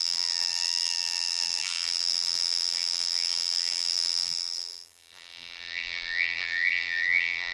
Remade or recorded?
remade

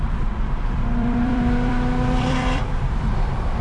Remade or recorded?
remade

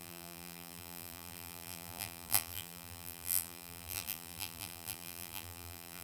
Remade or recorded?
remade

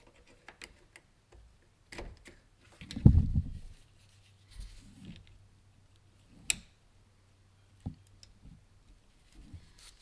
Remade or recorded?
recorded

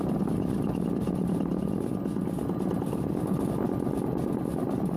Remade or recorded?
recorded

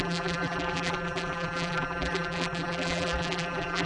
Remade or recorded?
remade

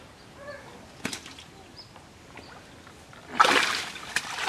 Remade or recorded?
recorded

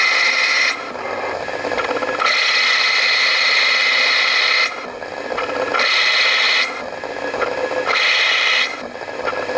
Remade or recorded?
recorded